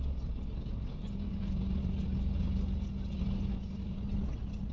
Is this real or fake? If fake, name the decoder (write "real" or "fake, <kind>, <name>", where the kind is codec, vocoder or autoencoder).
real